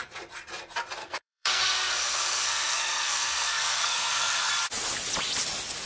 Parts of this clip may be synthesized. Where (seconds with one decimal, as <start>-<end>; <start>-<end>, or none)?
1.0-4.5